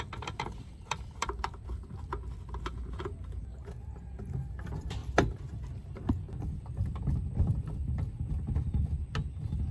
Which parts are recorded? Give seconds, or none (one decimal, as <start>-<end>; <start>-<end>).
2.1-4.5; 5.0-9.7